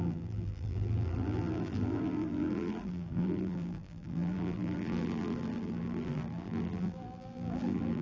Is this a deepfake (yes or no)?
yes